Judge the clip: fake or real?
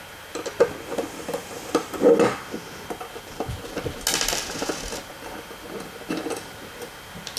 real